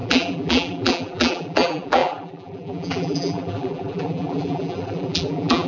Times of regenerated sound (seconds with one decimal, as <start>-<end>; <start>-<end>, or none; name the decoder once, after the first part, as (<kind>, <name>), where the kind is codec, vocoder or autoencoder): 0.0-5.7 (vocoder, BigVGAN v2)